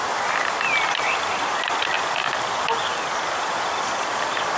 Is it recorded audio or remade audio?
recorded